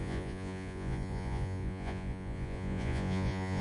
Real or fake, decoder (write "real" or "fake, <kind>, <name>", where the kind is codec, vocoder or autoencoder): fake, vocoder, Vocos